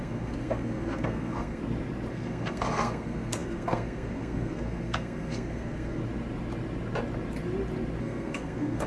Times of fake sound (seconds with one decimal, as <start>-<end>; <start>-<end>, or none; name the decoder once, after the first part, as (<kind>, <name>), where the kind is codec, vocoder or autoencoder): 0.0-1.6 (codec, SNAC); 2.1-6.0; 8.0-8.9